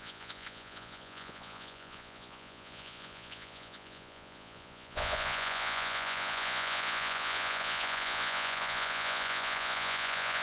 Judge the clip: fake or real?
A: fake